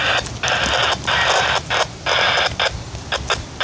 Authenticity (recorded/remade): recorded